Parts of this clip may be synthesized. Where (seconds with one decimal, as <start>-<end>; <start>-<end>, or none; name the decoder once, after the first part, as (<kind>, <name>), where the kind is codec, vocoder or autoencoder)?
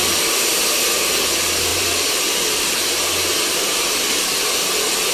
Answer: 1.7-4.2 (vocoder, BigVGAN v2)